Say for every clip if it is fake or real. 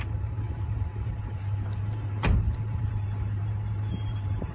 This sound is fake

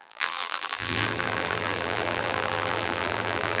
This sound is fake